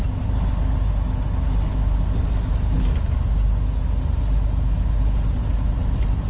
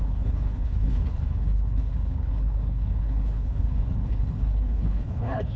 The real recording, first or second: first